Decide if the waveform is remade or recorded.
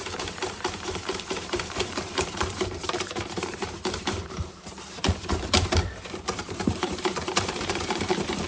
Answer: remade